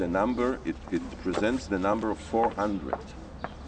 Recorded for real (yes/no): yes